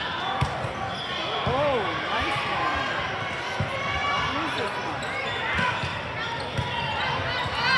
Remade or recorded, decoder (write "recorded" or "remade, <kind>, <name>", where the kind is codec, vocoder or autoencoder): recorded